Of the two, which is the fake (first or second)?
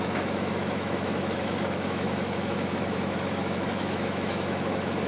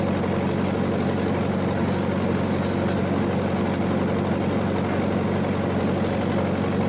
first